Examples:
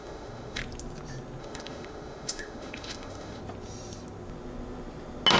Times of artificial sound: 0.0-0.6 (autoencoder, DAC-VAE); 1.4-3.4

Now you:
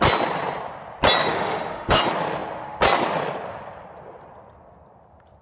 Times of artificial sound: 1.2-2.0 (autoencoder, DAC-VAE)

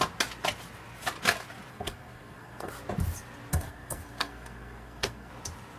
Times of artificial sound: 1.7-2.7 (codec, SNAC); 3.5-5.3

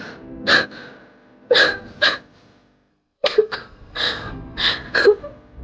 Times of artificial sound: 2.9-4.7 (codec, SNAC)